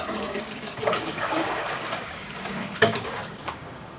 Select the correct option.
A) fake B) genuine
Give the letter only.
A